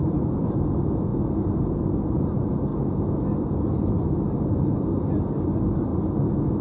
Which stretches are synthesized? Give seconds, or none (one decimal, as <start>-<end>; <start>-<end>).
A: 2.7-4.0